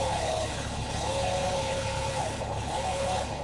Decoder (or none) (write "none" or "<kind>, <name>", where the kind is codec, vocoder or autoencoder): codec, HILCodec